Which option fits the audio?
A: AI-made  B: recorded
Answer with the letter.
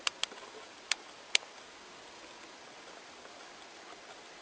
B